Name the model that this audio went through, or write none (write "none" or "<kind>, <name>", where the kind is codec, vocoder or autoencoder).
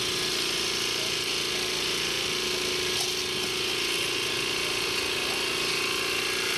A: none